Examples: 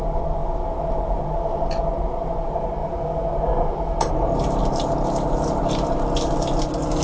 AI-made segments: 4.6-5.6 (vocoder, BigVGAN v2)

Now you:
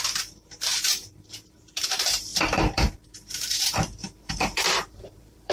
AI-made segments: 0.0-5.5 (vocoder, BigVGAN v2)

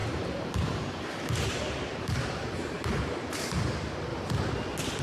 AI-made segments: 0.0-3.0 (vocoder, BigVGAN v2)

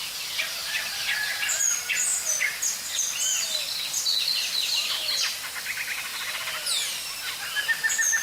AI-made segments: 0.6-1.6 (vocoder, BigVGAN v2)